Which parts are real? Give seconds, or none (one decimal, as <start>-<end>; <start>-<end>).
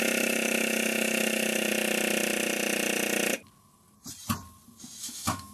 1.7-5.0